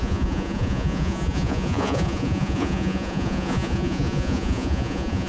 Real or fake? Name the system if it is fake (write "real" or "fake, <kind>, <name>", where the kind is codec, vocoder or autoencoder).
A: fake, vocoder, Vocos